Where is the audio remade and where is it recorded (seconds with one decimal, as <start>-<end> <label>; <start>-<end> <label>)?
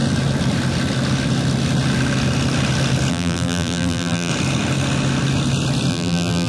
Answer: 0.0-3.1 recorded; 3.1-4.3 remade; 4.3-5.9 recorded; 5.9-6.5 remade